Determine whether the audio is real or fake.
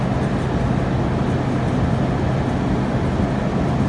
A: real